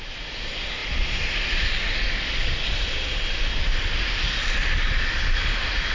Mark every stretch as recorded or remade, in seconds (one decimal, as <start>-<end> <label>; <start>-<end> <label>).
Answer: 0.0-5.9 recorded